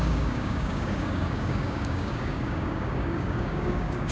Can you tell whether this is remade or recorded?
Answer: remade